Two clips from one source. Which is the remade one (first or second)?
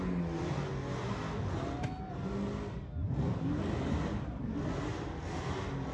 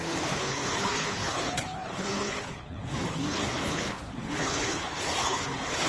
second